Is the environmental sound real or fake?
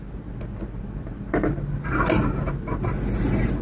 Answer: real